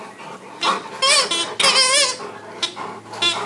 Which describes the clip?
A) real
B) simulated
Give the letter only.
A